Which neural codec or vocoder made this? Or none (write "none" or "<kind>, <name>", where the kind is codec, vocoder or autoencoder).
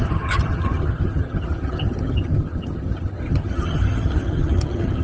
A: vocoder, HiFi-GAN